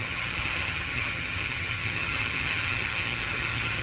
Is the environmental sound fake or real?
fake